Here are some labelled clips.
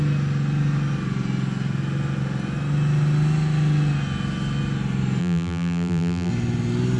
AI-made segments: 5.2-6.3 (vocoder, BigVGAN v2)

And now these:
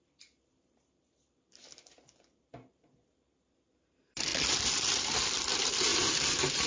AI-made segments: 0.0-4.3 (vocoder, BigVGAN v2); 5.5-6.7

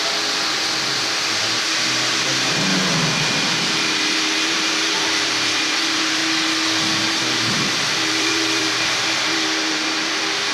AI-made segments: 0.9-2.7 (vocoder, BigVGAN v2); 3.5-6.2; 7.1-10.5

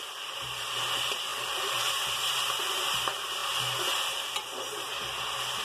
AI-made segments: 0.0-3.4 (vocoder, BigVGAN v2); 4.6-5.6

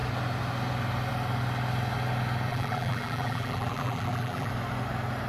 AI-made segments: 2.5-4.5 (vocoder, BigVGAN v2)

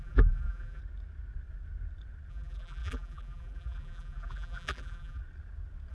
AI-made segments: 0.0-0.8 (vocoder, BigVGAN v2); 2.3-5.2